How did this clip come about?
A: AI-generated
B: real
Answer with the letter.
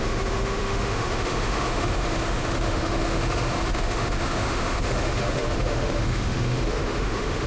A